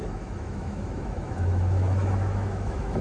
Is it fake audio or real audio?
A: fake